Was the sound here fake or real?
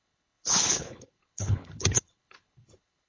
fake